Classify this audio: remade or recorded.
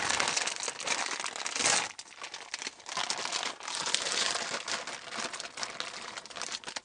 recorded